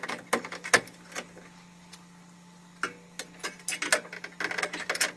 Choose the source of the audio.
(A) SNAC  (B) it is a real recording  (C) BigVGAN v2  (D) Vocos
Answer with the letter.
B